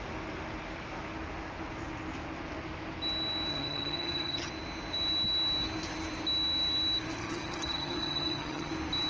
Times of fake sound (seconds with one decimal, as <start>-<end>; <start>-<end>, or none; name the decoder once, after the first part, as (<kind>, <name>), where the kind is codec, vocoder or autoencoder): 3.5-4.5 (vocoder, HiFi-GAN); 7.2-8.7